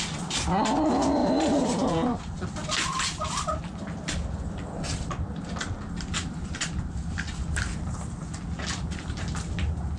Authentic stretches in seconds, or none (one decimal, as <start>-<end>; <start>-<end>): 0.0-1.2; 2.2-10.0

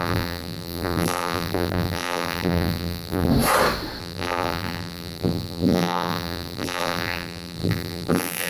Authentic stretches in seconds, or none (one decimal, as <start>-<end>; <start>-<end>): 3.3-4.0

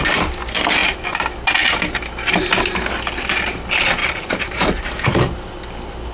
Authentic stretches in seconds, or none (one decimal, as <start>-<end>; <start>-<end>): 0.0-4.0; 5.4-6.1